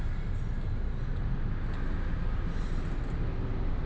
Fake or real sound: real